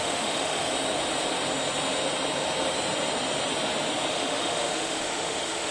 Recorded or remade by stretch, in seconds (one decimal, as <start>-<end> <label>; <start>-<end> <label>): 0.0-0.7 remade; 0.7-4.1 recorded; 4.1-5.7 remade